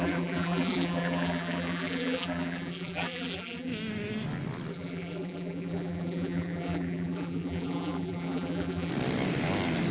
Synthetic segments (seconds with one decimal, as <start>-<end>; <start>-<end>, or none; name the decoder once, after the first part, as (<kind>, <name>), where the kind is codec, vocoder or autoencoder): 0.0-3.7 (vocoder, BigVGAN v2); 4.7-8.9